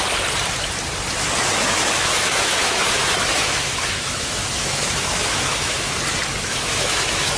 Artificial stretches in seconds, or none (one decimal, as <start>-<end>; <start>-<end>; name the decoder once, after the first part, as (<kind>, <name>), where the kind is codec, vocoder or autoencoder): 1.5-5.9 (autoencoder, DAC-VAE); 6.4-7.4